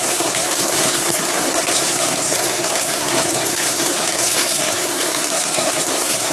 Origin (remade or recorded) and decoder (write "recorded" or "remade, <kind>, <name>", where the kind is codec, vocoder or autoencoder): remade, codec, SNAC